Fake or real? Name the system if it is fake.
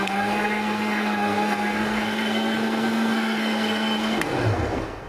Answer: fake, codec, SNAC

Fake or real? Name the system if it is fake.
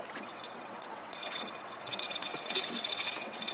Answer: fake, vocoder, WaveNeXt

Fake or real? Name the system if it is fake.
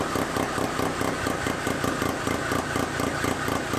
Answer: real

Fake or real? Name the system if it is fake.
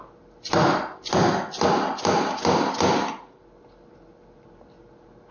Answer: real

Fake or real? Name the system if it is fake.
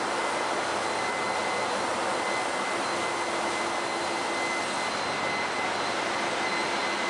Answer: real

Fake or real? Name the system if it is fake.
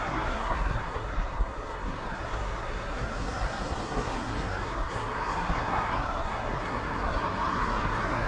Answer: fake, codec, SNAC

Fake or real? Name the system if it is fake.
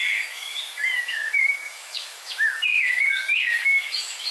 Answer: fake, codec, DAC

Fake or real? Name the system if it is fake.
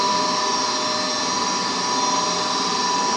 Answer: real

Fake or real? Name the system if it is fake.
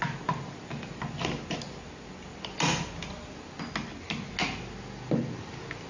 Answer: real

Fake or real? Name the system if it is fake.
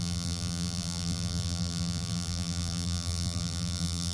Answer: fake, vocoder, BigVGAN v2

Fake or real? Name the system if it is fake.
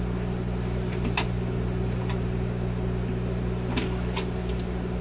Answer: real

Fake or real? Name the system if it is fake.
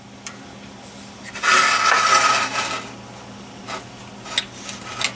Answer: real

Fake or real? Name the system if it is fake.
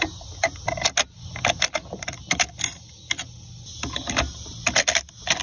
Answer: real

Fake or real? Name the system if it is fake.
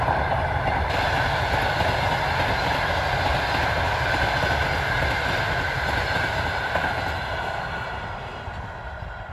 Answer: real